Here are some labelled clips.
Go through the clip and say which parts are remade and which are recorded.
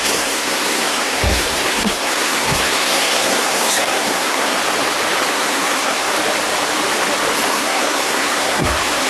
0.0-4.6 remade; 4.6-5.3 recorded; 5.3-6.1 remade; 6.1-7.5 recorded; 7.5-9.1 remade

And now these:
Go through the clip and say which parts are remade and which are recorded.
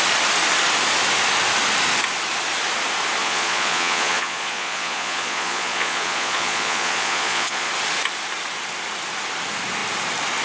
0.0-3.2 recorded; 3.2-7.7 remade; 7.7-10.4 recorded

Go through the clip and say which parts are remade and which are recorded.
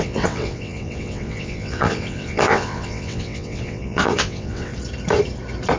0.0-4.7 remade; 4.7-5.8 recorded